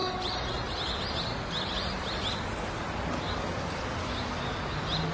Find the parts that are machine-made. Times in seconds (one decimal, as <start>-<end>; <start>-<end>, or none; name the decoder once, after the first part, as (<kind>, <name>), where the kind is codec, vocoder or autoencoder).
none